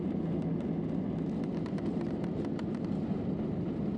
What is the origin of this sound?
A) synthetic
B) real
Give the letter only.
B